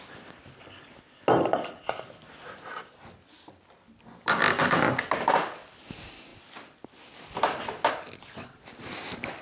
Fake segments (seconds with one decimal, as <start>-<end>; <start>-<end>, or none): none